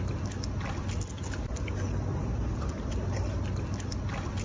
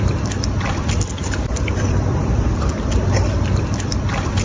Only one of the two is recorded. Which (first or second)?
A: first